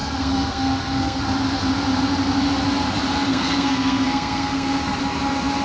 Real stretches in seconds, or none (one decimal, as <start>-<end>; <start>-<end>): 1.2-3.3; 5.0-5.6